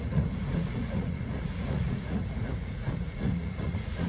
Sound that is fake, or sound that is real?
fake